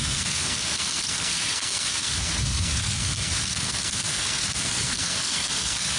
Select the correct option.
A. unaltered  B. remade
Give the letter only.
B